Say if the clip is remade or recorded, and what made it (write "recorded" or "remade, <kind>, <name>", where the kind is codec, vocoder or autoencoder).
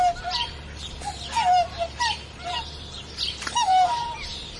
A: remade, vocoder, BigVGAN v2